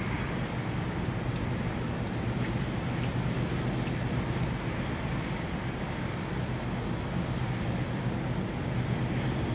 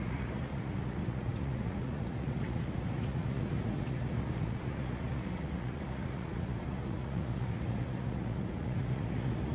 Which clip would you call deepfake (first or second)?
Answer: second